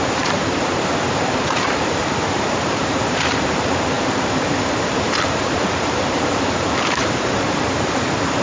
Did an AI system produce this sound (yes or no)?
yes